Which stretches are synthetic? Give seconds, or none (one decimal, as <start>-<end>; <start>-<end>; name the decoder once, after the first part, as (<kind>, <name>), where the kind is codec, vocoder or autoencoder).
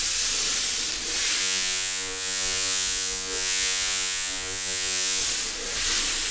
1.4-5.2 (vocoder, Vocos)